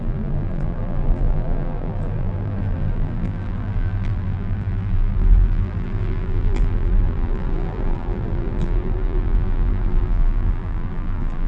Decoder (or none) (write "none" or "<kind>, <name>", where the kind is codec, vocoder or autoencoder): vocoder, BigVGAN v2